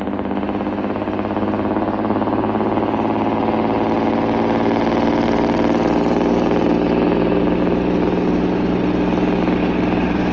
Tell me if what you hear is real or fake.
real